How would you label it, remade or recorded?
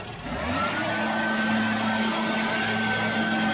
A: recorded